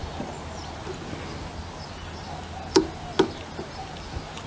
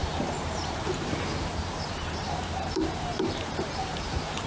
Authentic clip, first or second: first